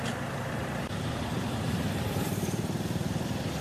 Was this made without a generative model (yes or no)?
no